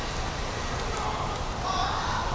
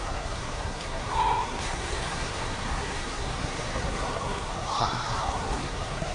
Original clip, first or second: first